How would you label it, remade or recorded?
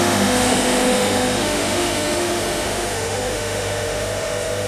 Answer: remade